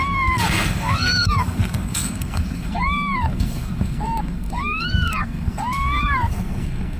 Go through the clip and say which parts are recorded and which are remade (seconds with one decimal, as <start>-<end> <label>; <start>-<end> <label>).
0.0-7.0 remade